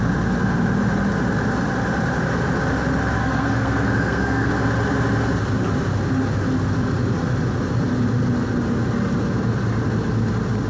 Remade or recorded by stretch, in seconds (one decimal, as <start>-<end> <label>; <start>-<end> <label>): 0.0-3.2 recorded; 3.2-4.5 remade; 4.5-10.7 recorded